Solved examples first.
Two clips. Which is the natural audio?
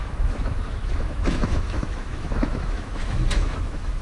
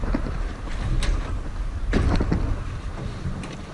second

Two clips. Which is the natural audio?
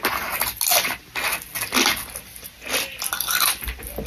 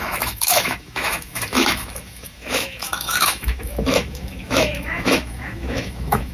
first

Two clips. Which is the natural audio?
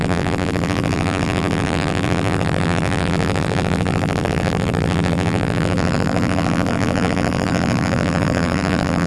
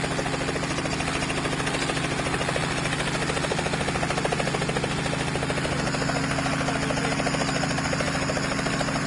second